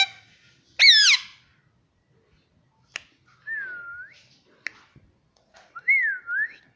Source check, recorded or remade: recorded